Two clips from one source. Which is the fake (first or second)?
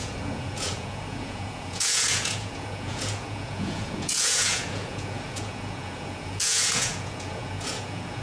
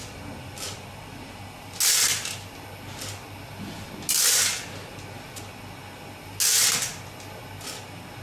first